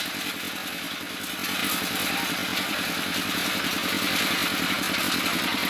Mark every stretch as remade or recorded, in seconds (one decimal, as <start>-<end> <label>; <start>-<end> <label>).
0.0-1.6 recorded; 1.6-5.0 remade; 5.0-5.7 recorded